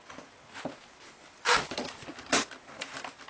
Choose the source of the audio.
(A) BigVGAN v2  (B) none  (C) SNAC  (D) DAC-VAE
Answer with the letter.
B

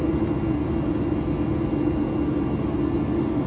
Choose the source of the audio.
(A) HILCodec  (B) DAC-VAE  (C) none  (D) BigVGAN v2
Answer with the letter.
C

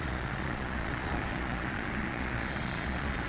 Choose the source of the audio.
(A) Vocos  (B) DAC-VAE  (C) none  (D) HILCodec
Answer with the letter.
A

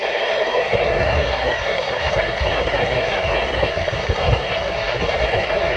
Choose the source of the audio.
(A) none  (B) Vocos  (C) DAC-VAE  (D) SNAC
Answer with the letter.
D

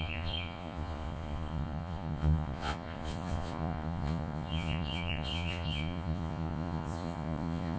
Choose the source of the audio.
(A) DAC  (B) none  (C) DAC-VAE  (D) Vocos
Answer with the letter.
D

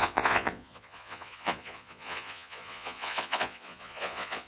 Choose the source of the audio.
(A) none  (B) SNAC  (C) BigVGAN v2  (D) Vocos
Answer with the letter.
D